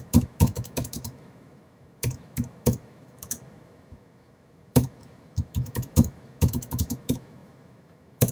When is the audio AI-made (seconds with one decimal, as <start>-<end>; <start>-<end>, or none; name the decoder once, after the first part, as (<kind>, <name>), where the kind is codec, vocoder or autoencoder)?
0.0-8.3 (autoencoder, DAC-VAE)